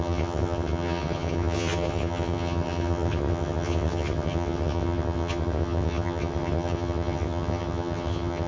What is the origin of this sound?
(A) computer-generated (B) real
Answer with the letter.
A